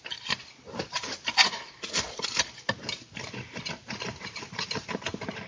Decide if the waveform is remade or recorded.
recorded